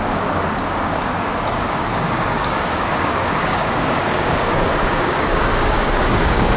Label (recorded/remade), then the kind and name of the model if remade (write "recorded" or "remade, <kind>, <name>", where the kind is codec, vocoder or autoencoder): remade, codec, DAC